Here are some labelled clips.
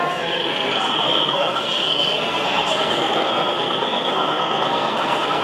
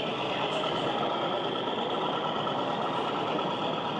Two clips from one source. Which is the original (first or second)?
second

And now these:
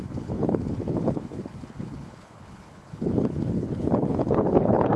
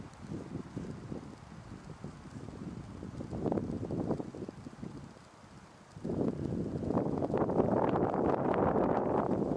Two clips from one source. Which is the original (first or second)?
second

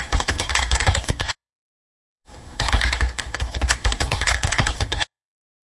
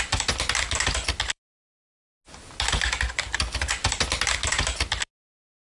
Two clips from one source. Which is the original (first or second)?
second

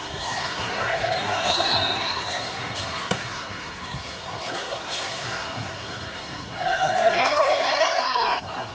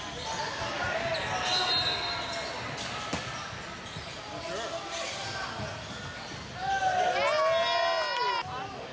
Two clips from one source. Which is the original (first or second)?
second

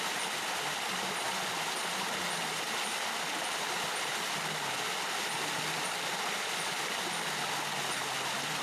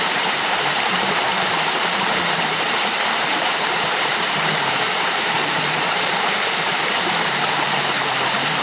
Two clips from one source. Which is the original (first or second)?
first